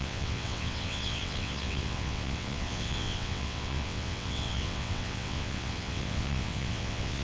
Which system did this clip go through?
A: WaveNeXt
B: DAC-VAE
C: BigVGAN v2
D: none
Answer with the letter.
A